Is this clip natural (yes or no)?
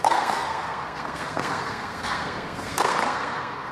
no